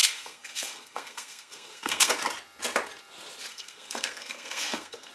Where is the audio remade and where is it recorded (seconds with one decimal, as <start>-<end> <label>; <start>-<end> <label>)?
0.0-2.1 remade; 2.1-3.5 recorded; 3.5-5.1 remade